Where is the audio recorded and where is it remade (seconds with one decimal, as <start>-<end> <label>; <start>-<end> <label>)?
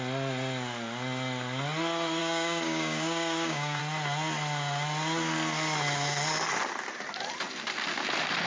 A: 0.0-2.2 recorded; 2.2-3.8 remade; 3.8-8.5 recorded